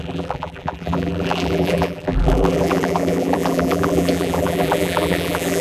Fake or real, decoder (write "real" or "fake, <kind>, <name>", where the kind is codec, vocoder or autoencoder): fake, vocoder, BigVGAN v2